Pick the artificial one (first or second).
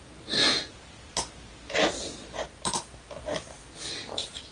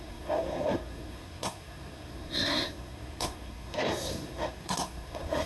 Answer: second